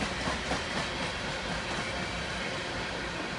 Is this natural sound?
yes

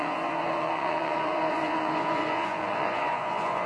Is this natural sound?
no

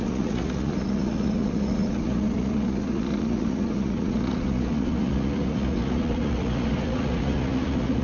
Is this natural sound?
no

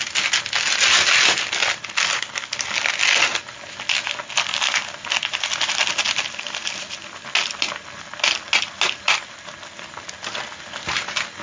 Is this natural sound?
yes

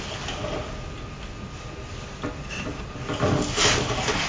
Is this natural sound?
yes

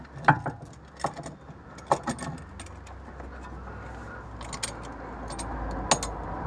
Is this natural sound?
yes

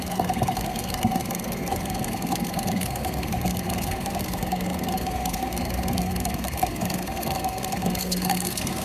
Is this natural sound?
no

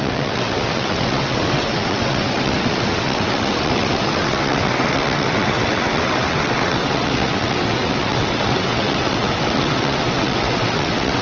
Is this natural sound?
no